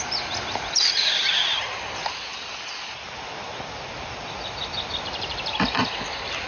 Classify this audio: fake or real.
real